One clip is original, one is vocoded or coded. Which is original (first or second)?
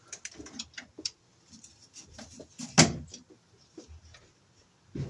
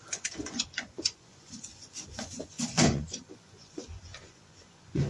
first